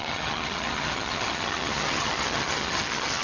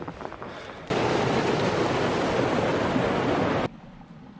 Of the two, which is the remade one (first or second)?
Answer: first